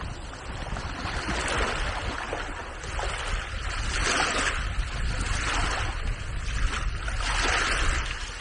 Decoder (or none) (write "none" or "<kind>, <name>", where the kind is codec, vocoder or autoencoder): none